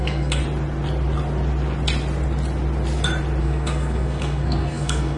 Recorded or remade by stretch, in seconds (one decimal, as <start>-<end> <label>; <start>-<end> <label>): 0.0-0.4 remade; 0.4-3.4 recorded; 3.4-5.2 remade